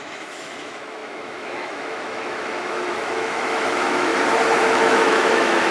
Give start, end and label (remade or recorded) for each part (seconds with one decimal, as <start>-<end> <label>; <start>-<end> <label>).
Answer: 0.0-4.1 remade; 4.1-4.7 recorded; 4.7-5.7 remade